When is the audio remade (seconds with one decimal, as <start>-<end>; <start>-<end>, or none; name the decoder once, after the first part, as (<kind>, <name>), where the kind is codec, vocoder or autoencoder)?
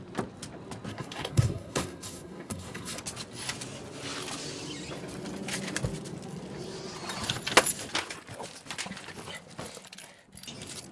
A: 0.9-3.0 (codec, SNAC)